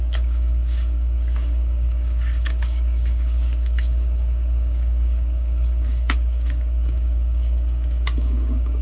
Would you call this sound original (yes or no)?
no